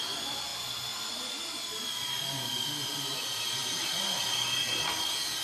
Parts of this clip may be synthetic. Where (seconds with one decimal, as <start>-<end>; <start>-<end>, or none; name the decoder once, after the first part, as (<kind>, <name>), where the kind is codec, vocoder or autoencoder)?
3.6-4.9 (vocoder, BigVGAN v2)